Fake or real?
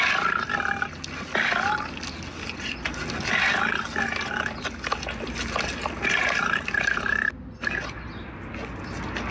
real